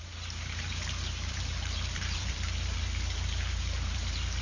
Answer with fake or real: fake